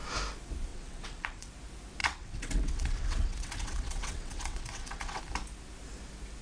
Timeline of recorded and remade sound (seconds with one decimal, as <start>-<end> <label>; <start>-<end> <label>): 0.0-0.7 recorded; 0.7-1.5 remade; 1.5-2.0 recorded; 2.0-5.2 remade; 5.2-6.4 recorded